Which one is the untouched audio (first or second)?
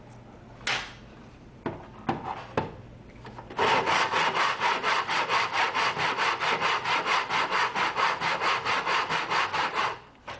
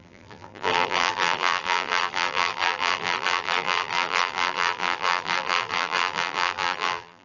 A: first